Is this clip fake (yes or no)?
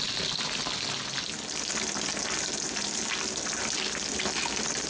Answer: no